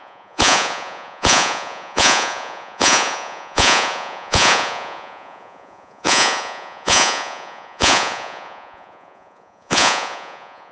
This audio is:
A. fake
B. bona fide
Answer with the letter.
A